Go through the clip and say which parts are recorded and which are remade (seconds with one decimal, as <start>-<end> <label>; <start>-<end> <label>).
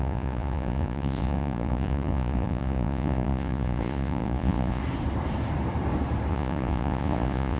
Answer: 0.0-4.8 remade; 4.8-6.3 recorded; 6.3-7.6 remade